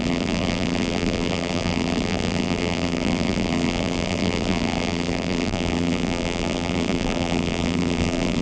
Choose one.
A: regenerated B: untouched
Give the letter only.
A